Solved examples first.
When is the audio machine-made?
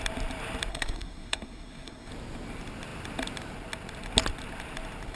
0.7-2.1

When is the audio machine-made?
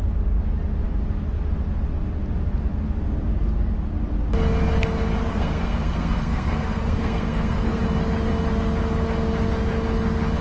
5.3-7.8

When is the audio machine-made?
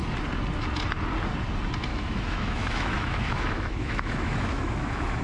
1.9-5.2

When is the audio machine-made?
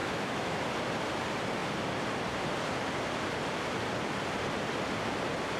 0.0-0.6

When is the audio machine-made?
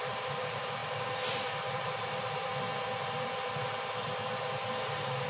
0.0-2.5